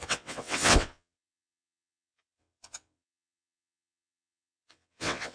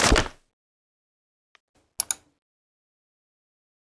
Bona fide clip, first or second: second